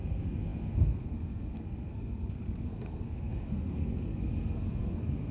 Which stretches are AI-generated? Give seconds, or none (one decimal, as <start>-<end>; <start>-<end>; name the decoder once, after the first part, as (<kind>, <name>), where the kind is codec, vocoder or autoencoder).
0.0-5.3 (codec, SNAC)